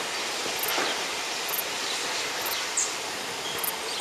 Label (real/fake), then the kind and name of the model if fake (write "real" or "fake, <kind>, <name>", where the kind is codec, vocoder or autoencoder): real